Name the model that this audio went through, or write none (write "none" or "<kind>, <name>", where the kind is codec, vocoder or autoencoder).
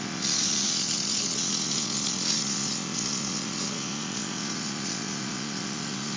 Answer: vocoder, Vocos